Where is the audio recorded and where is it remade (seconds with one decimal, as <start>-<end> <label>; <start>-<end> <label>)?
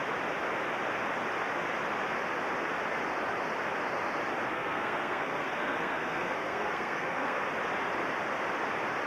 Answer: 0.0-4.5 recorded; 4.5-7.5 remade; 7.5-9.1 recorded